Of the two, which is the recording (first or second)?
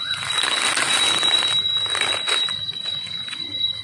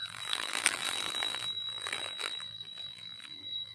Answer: first